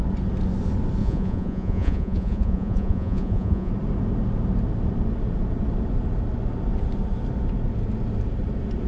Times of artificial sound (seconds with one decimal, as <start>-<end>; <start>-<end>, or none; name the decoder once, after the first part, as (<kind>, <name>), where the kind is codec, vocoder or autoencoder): 1.0-3.7 (vocoder, Vocos)